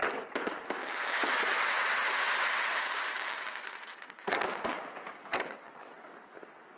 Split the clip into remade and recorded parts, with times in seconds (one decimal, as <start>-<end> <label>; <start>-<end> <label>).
0.0-0.8 recorded; 0.8-4.8 remade; 4.8-5.2 recorded; 5.2-6.1 remade; 6.1-6.8 recorded